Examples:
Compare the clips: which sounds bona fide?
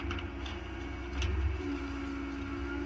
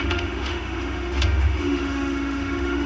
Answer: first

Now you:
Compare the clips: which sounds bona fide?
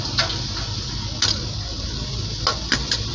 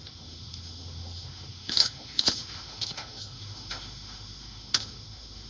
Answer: first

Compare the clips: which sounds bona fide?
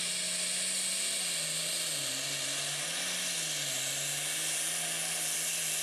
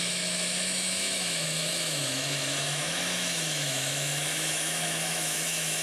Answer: first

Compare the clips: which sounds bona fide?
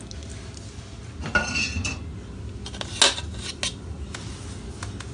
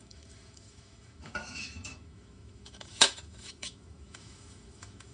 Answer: first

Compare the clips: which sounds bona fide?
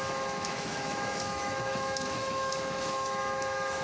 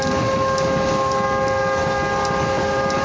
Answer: second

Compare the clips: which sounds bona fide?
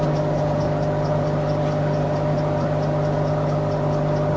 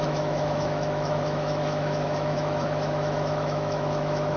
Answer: first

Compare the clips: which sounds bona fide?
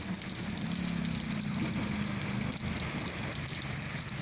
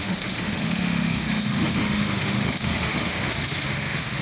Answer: first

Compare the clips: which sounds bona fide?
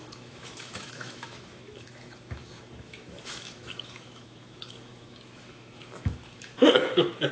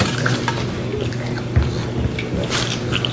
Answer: second